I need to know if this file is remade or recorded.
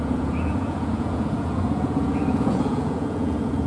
remade